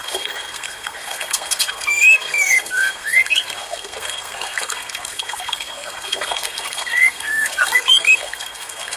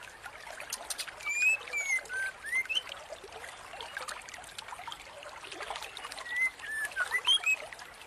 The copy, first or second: first